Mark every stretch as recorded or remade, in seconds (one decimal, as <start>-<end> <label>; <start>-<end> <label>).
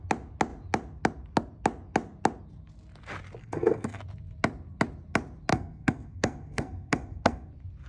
0.0-3.4 recorded; 3.4-4.0 remade; 4.0-5.5 recorded; 5.5-7.5 remade; 7.5-7.9 recorded